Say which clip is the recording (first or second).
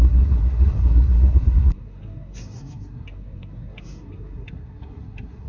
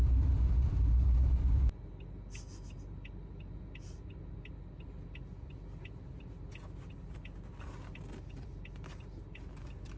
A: second